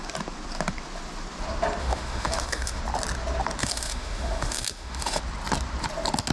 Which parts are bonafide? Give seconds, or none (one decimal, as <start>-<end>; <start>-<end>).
0.0-1.8; 2.8-3.6; 5.2-6.3